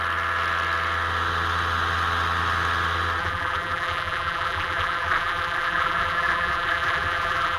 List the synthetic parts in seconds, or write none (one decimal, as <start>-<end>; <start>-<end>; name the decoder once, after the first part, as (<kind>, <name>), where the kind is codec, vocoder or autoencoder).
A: 3.2-7.6 (vocoder, BigVGAN v2)